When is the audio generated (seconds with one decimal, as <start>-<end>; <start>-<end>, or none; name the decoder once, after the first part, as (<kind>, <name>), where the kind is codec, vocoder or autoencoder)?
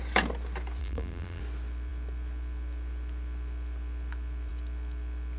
0.8-1.4 (vocoder, BigVGAN v2)